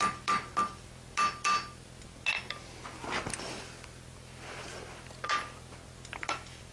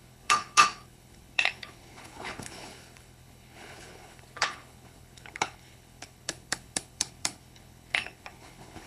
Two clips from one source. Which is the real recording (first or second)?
first